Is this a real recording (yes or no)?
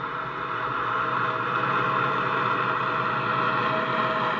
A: yes